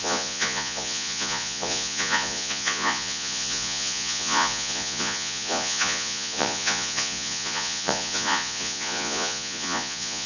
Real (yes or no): no